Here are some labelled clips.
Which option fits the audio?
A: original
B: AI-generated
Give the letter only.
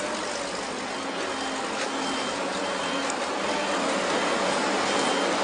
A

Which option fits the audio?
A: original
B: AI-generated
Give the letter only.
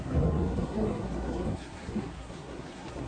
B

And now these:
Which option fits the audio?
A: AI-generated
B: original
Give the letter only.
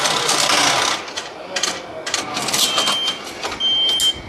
B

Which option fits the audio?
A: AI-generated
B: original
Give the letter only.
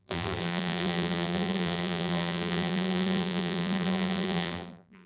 A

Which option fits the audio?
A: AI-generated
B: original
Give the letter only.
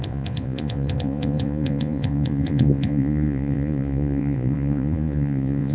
A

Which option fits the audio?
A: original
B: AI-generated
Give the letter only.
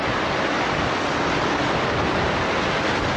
A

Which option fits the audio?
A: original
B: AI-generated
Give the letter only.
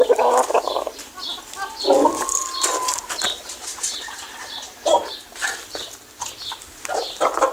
A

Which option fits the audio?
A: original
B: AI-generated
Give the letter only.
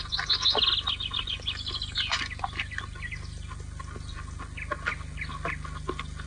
A